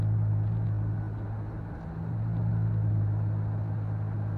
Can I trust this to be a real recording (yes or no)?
yes